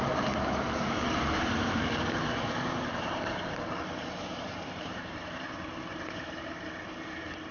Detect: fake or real fake